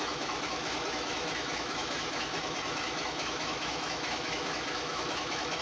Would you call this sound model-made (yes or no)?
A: yes